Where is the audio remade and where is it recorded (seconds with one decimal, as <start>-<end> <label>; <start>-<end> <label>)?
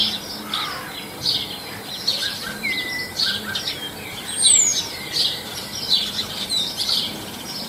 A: 0.0-2.1 recorded; 2.1-7.7 remade